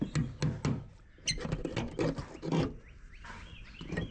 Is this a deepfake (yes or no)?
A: no